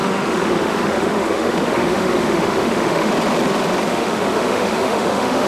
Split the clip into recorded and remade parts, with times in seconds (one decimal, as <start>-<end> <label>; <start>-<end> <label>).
0.0-3.1 remade; 3.1-3.9 recorded; 3.9-5.5 remade